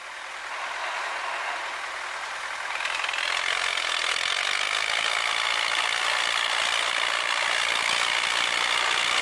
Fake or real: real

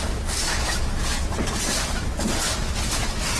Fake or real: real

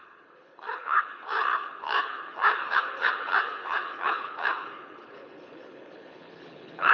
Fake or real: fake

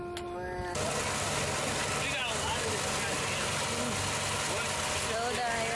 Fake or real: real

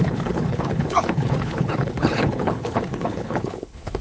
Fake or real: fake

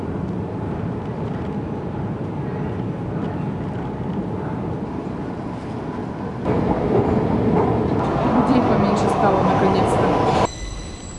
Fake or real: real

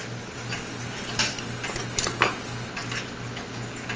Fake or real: real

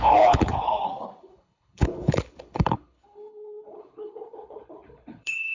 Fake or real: fake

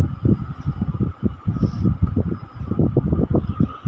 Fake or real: real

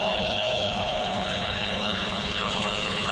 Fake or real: fake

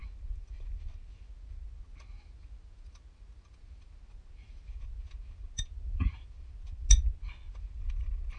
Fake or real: real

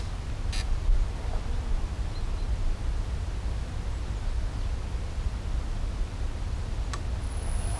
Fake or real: real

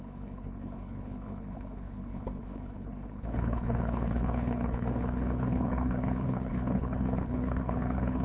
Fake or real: fake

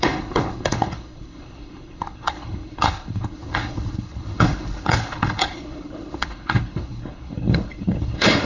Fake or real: fake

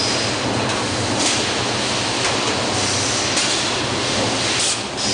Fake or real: real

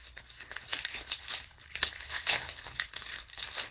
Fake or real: fake